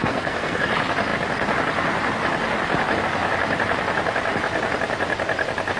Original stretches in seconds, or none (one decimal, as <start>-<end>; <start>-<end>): 0.6-5.8